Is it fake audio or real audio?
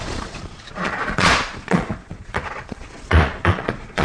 fake